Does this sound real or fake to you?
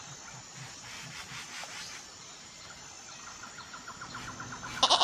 real